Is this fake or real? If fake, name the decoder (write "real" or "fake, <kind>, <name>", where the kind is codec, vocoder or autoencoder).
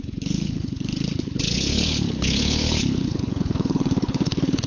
fake, codec, HILCodec